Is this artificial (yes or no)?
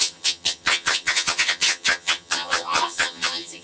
yes